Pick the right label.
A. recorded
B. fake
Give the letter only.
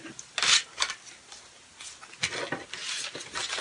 A